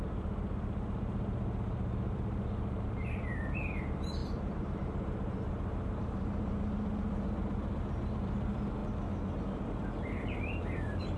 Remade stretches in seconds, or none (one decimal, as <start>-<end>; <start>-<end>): 0.0-8.8; 9.4-11.2